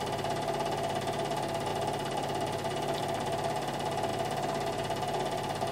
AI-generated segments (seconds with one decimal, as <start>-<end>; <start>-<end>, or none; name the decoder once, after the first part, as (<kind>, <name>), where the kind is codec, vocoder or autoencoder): none

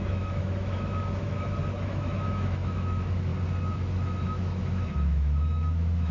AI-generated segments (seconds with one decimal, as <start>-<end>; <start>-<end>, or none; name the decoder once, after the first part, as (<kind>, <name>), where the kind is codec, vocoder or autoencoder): 0.0-3.3 (autoencoder, DAC-VAE); 3.9-6.1

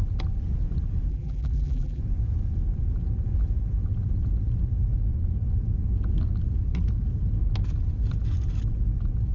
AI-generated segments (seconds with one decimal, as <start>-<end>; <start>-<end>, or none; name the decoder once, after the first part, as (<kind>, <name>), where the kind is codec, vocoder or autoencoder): 1.1-2.0 (vocoder, BigVGAN v2)